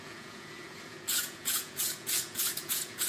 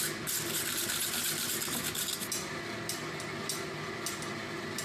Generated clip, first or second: first